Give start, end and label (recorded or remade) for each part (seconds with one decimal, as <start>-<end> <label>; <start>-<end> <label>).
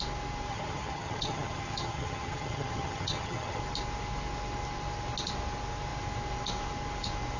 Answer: 0.0-0.5 recorded; 0.5-3.6 remade; 3.6-7.4 recorded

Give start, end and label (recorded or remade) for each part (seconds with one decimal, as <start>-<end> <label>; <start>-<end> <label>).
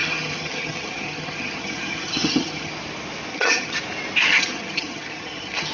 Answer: 0.0-2.7 remade; 2.7-3.3 recorded; 3.3-3.8 remade; 3.8-4.3 recorded; 4.3-5.7 remade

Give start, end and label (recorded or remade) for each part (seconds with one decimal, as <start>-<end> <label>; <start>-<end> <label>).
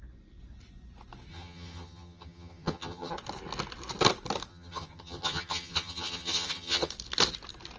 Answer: 0.0-1.3 recorded; 1.3-3.1 remade; 3.1-4.5 recorded; 4.5-6.9 remade; 6.9-7.8 recorded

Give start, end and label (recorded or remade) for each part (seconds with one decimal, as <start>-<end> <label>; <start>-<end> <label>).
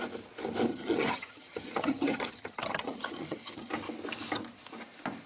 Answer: 0.0-0.7 recorded; 0.7-3.7 remade; 3.7-5.3 recorded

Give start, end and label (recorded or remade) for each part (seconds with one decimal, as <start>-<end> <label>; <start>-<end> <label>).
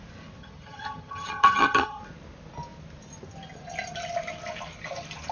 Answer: 0.0-0.4 recorded; 0.4-2.0 remade; 2.0-5.3 recorded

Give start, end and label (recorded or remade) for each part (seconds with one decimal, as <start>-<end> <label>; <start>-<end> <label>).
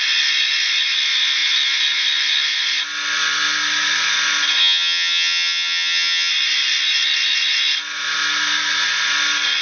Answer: 0.0-4.6 recorded; 4.6-6.3 remade; 6.3-9.6 recorded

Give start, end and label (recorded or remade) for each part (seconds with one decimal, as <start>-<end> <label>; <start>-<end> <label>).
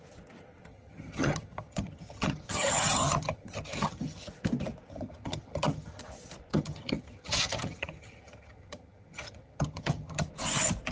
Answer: 0.0-0.7 recorded; 0.7-4.3 remade; 4.3-4.9 recorded; 4.9-6.0 remade; 6.0-6.5 recorded; 6.5-10.3 remade; 10.3-10.9 recorded